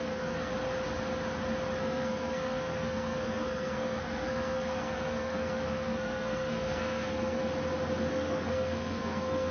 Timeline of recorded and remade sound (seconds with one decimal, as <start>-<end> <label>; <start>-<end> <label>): 0.0-0.5 remade; 0.5-1.8 recorded; 1.8-7.4 remade; 7.4-8.1 recorded; 8.1-9.5 remade